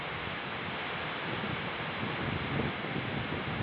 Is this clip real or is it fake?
real